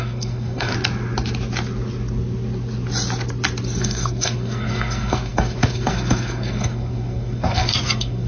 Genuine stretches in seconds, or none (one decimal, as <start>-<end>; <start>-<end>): 0.7-3.8

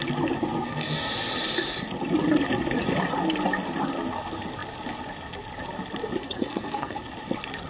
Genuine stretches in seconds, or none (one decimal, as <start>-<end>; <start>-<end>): 0.0-0.4; 1.1-6.2; 7.0-7.7

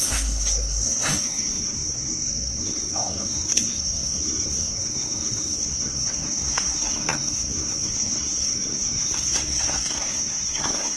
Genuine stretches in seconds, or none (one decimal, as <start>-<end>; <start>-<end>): none